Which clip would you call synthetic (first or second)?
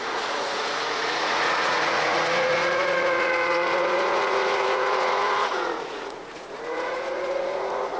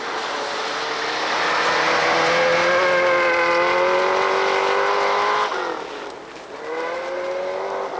first